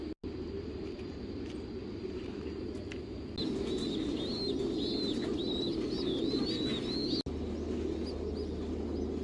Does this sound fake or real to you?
real